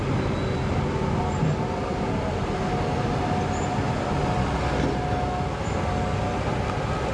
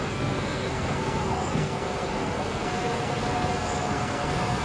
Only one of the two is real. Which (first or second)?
first